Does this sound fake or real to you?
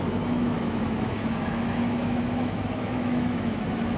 fake